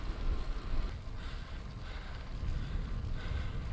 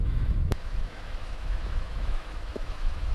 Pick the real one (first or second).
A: first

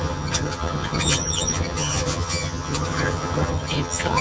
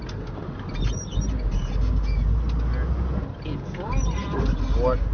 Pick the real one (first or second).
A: second